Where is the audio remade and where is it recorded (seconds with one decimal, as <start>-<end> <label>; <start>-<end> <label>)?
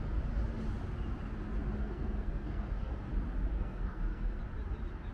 0.0-1.8 recorded; 1.8-3.1 remade; 3.1-3.5 recorded; 3.5-4.4 remade; 4.4-5.1 recorded